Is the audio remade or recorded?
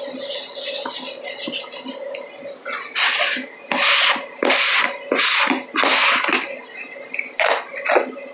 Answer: recorded